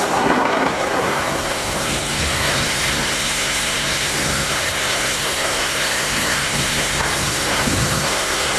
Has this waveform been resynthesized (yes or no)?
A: yes